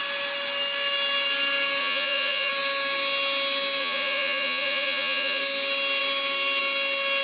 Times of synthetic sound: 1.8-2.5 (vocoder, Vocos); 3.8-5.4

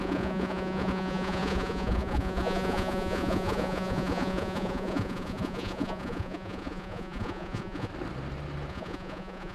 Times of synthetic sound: 0.0-7.9 (vocoder, Vocos); 8.7-9.5